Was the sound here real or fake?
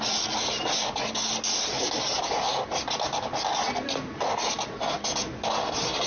real